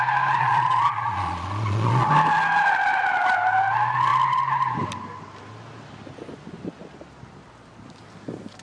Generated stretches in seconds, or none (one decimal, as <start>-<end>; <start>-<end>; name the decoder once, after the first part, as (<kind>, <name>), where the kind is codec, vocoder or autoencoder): 0.4-2.1 (vocoder, Vocos)